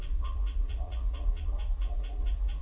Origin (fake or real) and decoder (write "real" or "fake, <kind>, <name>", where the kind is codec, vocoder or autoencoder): fake, vocoder, Vocos